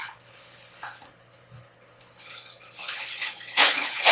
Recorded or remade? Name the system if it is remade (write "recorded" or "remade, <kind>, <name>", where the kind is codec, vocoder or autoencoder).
remade, codec, HILCodec